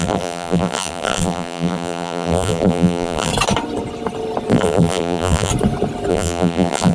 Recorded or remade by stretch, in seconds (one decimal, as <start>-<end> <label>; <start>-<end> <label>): 0.0-3.3 remade; 3.3-4.5 recorded; 4.5-5.5 remade; 5.5-6.1 recorded; 6.1-6.9 remade